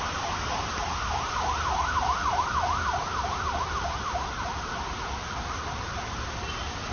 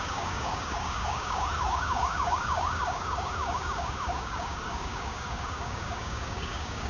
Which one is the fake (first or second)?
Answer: second